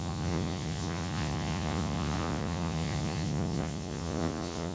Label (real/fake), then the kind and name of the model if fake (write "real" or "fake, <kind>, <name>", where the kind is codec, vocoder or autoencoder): fake, vocoder, Vocos